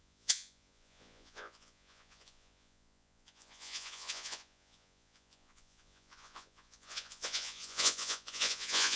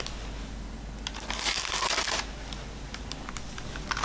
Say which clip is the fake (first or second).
first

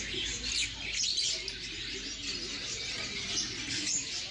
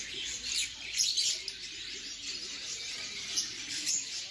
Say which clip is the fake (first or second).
second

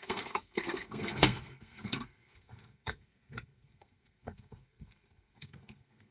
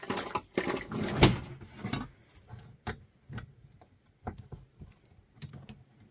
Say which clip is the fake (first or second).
first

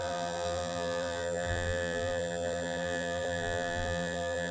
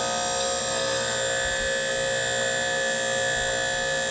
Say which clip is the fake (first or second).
first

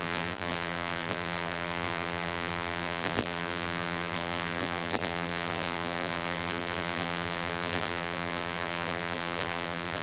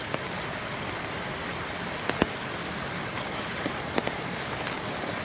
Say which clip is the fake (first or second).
first